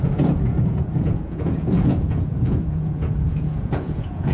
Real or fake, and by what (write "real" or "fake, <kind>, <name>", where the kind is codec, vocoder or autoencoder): fake, vocoder, Vocos